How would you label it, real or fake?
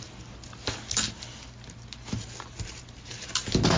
real